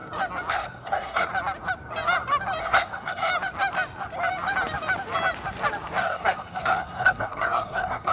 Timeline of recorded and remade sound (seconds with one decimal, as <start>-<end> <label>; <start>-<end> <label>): 0.0-0.5 recorded; 0.5-1.3 remade; 1.3-2.6 recorded; 2.6-3.3 remade; 3.3-6.0 recorded; 6.0-8.1 remade